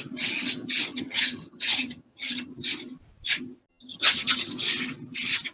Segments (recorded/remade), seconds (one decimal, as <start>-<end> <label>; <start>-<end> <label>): 0.0-0.9 recorded; 0.9-2.5 remade; 2.5-3.7 recorded; 3.7-4.5 remade; 4.5-5.5 recorded

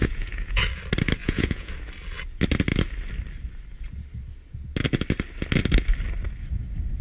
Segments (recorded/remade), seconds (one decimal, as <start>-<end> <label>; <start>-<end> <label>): 0.0-0.6 remade; 0.6-1.2 recorded; 1.2-1.7 remade; 1.7-7.0 recorded

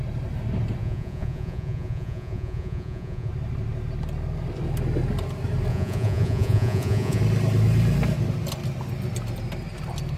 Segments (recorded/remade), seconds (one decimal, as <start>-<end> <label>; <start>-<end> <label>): 0.0-0.8 recorded; 0.8-3.3 remade; 3.3-5.7 recorded; 5.7-7.2 remade; 7.2-10.2 recorded